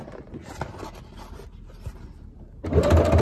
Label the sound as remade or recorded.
recorded